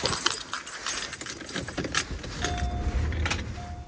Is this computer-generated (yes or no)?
no